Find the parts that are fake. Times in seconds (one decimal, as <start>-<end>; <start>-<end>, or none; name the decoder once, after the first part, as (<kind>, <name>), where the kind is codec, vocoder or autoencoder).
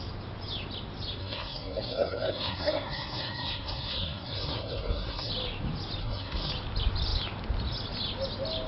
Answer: 1.2-5.3 (codec, SNAC); 6.0-6.5